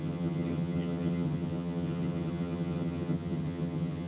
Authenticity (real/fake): fake